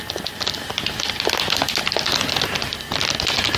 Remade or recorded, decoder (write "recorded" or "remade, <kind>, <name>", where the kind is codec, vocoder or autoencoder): recorded